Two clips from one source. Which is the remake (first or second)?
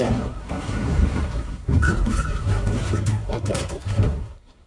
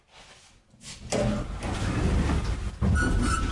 first